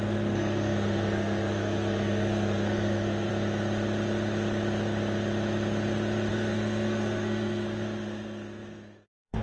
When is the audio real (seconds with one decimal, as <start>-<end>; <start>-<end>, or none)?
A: 3.3-6.3